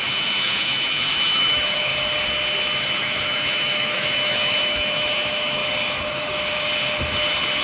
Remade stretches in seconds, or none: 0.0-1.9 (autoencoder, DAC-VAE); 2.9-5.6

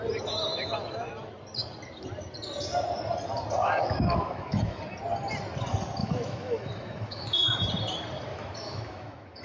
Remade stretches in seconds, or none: 0.5-1.1 (autoencoder, DAC-VAE); 3.6-4.8; 6.0-7.7; 8.3-9.4

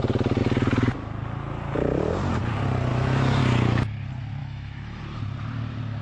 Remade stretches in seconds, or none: 2.9-3.4 (autoencoder, DAC-VAE); 4.4-5.0

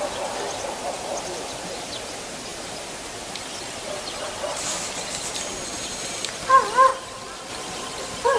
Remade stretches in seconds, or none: none

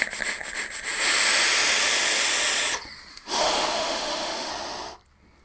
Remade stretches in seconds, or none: 3.1-4.5 (autoencoder, DAC-VAE)